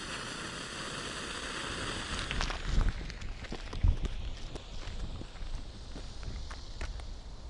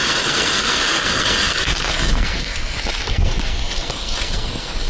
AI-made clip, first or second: second